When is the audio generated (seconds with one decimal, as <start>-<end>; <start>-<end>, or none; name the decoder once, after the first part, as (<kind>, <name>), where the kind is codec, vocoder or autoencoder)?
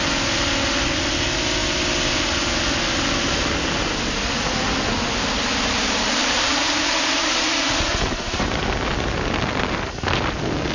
6.2-7.3 (vocoder, BigVGAN v2); 7.9-8.6